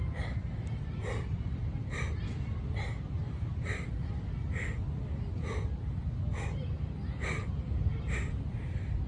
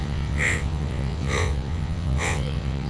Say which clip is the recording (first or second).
first